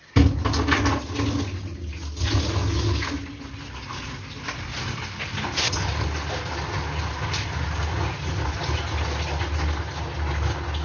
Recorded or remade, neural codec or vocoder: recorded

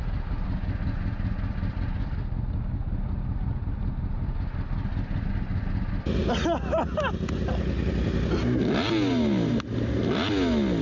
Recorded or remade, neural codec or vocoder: recorded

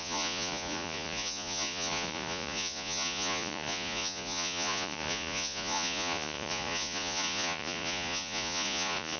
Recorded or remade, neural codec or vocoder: remade, vocoder, Vocos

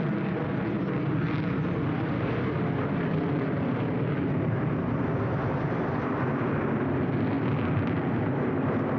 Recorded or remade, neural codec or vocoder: remade, vocoder, BigVGAN v2